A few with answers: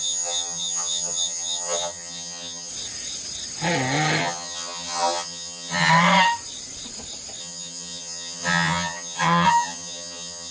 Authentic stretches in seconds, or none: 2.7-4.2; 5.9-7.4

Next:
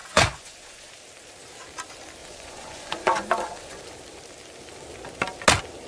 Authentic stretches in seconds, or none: 0.9-2.2; 3.8-5.9

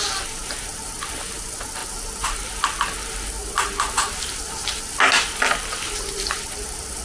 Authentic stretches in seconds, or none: 0.0-7.0

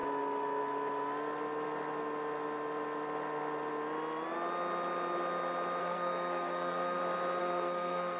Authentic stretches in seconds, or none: 0.0-5.8; 7.0-7.4

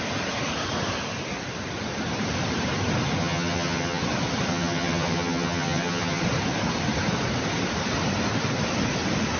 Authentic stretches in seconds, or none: 0.0-3.2; 4.0-4.5; 6.2-9.4

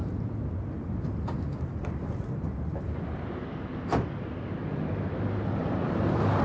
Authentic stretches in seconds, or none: 0.0-6.4

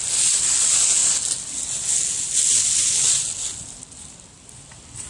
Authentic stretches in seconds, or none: 0.0-5.1

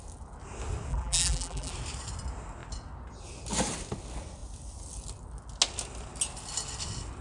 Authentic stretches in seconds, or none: 0.0-0.9; 1.7-7.2